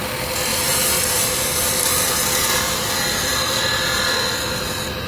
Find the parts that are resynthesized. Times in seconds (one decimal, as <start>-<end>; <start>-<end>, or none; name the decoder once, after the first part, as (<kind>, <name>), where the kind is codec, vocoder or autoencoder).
0.5-3.6 (vocoder, BigVGAN v2)